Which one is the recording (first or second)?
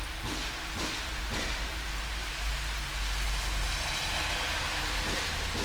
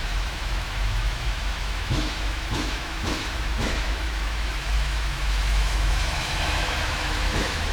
first